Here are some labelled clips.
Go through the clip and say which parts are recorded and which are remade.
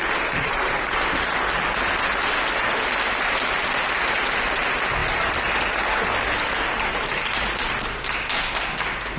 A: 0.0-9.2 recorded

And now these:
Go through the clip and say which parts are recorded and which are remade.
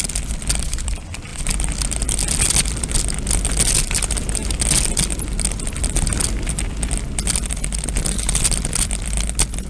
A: 0.0-9.7 recorded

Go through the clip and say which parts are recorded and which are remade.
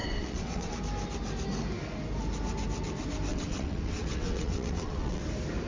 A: 0.0-0.7 remade; 0.7-3.3 recorded; 3.3-5.2 remade; 5.2-5.7 recorded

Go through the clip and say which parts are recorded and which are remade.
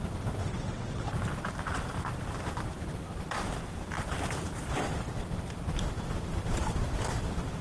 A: 0.0-0.4 recorded; 0.4-1.1 remade; 1.1-7.6 recorded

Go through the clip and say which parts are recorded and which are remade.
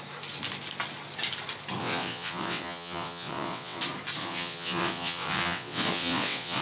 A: 0.0-1.8 recorded; 1.8-3.8 remade; 3.8-4.2 recorded; 4.2-6.6 remade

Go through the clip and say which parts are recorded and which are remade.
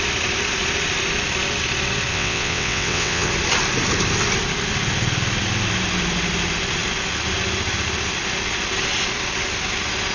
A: 0.0-2.1 recorded; 2.1-3.3 remade; 3.3-10.1 recorded